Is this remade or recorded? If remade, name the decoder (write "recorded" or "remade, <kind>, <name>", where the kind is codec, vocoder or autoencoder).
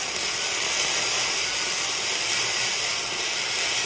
recorded